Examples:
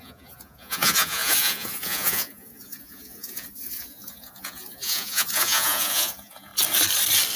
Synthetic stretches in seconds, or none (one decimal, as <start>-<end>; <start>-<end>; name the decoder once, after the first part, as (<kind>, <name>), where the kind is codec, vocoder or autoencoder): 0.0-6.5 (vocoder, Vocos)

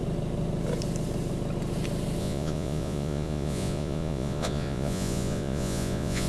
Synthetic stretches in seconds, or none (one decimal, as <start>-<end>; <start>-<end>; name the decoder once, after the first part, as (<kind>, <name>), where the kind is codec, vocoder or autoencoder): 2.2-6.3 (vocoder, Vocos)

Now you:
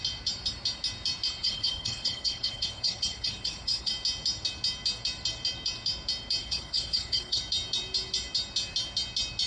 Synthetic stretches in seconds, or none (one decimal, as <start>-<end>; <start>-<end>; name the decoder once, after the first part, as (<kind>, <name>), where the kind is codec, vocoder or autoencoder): 1.4-3.9 (codec, HILCodec); 6.4-7.4

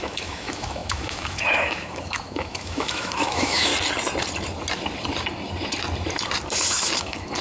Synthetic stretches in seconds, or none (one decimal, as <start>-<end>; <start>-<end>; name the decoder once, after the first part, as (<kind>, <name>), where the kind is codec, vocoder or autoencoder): 0.0-3.7 (autoencoder, DAC-VAE); 7.0-7.4